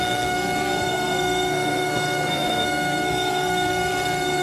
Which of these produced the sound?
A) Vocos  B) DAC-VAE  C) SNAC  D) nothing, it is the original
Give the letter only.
C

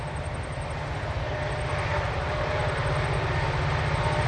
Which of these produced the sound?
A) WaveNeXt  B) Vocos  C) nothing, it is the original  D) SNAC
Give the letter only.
C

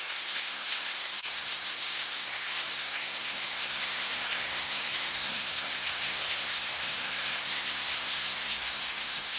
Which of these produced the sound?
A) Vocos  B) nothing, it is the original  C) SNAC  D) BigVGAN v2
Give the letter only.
C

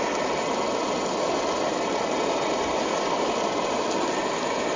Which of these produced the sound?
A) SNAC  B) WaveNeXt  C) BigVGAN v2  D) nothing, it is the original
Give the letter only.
D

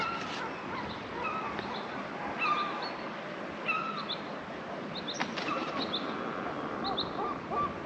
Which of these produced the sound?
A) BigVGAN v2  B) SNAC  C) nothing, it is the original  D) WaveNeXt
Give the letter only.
C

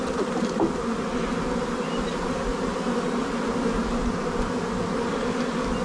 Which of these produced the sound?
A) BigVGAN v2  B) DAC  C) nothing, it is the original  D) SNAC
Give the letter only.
C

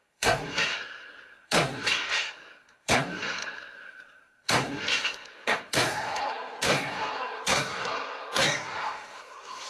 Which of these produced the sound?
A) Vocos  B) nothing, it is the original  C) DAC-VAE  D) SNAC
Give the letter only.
D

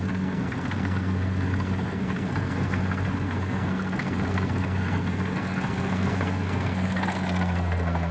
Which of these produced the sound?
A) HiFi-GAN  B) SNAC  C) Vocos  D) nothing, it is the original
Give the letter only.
B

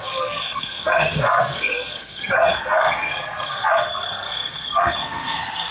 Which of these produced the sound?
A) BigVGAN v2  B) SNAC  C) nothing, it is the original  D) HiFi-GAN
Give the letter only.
B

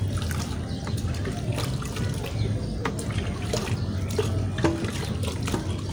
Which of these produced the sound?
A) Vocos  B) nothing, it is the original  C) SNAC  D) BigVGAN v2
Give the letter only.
B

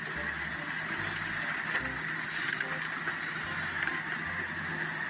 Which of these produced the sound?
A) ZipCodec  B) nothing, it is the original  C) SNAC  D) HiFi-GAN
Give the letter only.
B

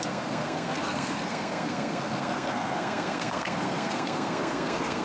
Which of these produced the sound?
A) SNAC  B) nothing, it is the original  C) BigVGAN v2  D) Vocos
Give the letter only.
A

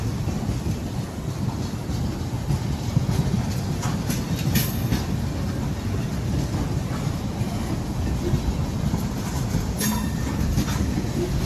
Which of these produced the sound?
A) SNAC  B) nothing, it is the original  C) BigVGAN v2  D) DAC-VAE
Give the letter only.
B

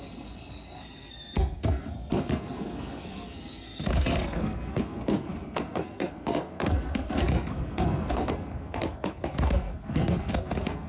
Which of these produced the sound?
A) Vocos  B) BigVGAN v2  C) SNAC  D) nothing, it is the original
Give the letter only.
C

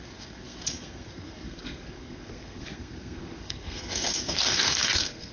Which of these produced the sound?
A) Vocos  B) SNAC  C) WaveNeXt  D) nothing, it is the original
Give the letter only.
B